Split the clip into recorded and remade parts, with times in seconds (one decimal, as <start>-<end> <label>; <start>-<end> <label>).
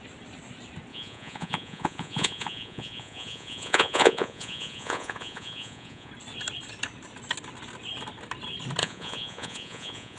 0.0-0.9 recorded; 0.9-6.1 remade; 6.1-8.8 recorded; 8.8-10.2 remade